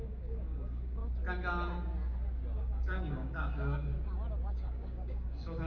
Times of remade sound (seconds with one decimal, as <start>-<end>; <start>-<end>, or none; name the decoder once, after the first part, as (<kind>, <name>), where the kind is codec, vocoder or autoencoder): 0.0-1.0 (codec, DAC); 2.6-3.9; 4.5-5.7